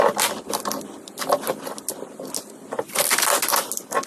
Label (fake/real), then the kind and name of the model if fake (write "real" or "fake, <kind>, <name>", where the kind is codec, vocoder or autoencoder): real